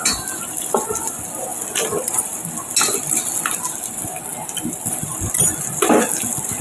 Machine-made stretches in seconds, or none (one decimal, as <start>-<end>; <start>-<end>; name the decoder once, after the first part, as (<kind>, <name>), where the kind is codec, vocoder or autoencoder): none